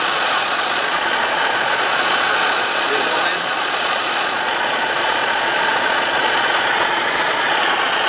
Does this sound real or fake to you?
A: fake